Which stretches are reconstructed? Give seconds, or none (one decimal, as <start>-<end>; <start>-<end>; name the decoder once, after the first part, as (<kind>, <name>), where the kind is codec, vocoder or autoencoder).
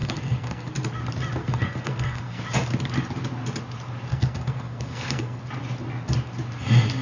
0.0-0.7 (codec, SNAC); 1.4-2.4; 4.1-5.4